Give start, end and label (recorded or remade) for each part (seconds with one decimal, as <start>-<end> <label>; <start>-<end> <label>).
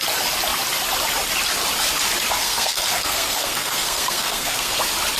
0.0-2.4 recorded; 2.4-4.8 remade; 4.8-5.2 recorded